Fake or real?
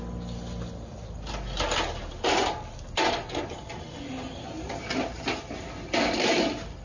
real